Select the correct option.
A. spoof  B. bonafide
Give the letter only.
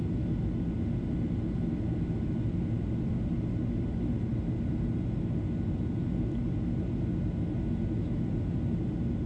B